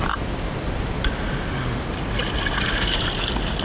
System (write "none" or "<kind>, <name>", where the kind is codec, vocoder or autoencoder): none